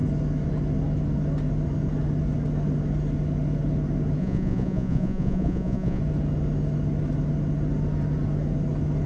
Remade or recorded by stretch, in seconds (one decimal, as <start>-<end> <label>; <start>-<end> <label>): 0.0-4.2 recorded; 4.2-6.0 remade; 6.0-9.1 recorded